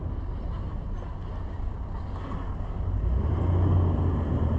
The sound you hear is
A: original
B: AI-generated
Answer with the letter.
A